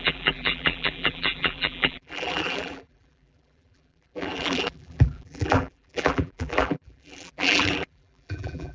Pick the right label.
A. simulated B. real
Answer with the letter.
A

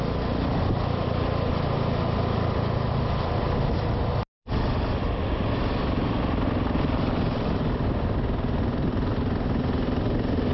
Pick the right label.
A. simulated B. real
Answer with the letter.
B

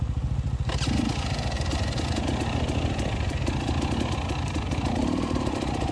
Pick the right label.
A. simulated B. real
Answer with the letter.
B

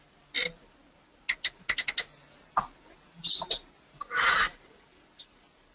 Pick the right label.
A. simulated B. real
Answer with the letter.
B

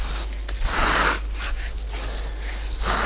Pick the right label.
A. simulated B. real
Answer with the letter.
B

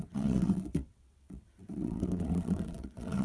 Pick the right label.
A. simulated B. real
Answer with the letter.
A